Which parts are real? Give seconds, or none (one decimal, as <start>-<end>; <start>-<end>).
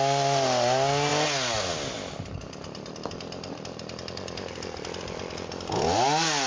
0.0-6.5